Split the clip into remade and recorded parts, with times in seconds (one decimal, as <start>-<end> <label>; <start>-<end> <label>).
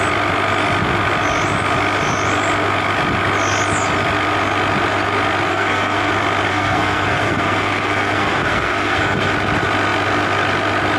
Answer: 0.0-5.5 recorded; 5.5-6.1 remade; 6.1-6.5 recorded; 6.5-9.3 remade; 9.3-11.0 recorded